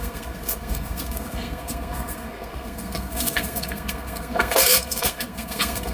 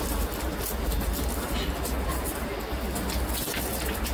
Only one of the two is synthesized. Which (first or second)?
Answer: first